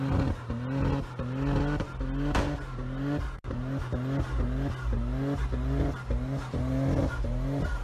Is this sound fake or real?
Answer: real